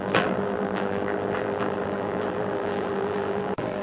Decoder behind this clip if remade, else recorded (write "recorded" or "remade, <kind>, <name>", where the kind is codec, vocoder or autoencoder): remade, vocoder, BigVGAN v2